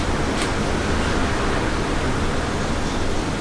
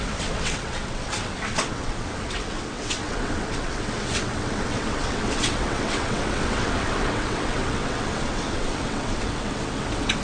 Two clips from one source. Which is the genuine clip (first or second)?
first